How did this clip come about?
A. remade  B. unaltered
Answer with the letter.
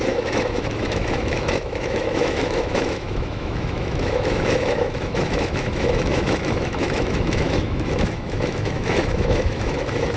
A